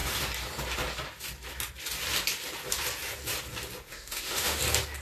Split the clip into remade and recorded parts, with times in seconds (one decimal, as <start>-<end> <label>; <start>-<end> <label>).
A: 0.0-3.9 recorded; 3.9-4.6 remade; 4.6-5.0 recorded